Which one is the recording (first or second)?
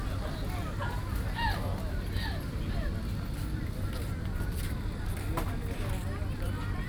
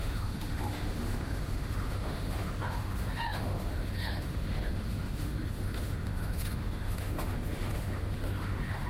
first